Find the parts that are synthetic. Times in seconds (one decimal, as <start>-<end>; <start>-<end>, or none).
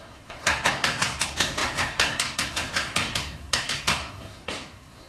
0.0-5.1